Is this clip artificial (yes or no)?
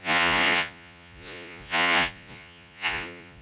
yes